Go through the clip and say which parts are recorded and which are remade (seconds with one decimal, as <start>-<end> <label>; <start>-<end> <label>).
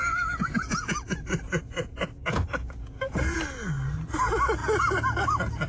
0.0-3.4 remade; 3.4-5.7 recorded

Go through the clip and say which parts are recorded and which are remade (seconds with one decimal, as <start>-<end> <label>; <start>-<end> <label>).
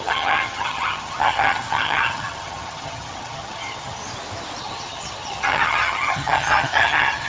0.0-4.0 remade; 4.0-4.6 recorded; 4.6-7.3 remade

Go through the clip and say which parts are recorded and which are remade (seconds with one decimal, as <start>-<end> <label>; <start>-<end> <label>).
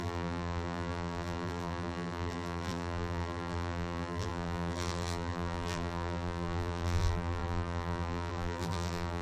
0.0-9.2 remade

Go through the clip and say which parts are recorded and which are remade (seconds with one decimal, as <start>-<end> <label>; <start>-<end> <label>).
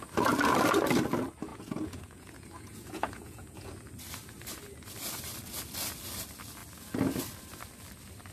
0.0-1.5 recorded; 1.5-3.7 remade; 3.7-8.3 recorded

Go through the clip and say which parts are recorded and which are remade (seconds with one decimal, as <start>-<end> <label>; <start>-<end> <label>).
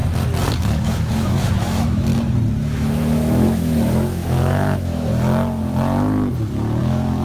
0.0-0.6 recorded; 0.6-2.1 remade; 2.1-2.6 recorded; 2.6-5.1 remade; 5.1-6.8 recorded; 6.8-7.2 remade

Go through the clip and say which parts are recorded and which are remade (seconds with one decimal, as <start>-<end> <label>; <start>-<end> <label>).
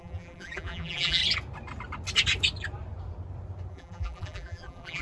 0.0-1.2 remade; 1.2-3.7 recorded; 3.7-5.0 remade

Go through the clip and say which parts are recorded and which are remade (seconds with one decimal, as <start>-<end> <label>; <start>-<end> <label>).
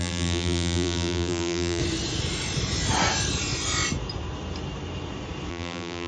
0.0-1.8 remade; 1.8-5.5 recorded; 5.5-6.1 remade